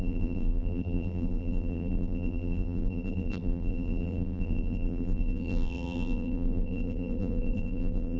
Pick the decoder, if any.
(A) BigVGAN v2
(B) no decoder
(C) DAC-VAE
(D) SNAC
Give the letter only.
A